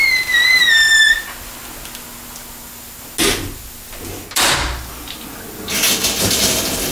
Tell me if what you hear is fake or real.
real